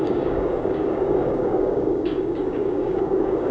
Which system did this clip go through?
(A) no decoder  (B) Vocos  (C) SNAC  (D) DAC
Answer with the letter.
D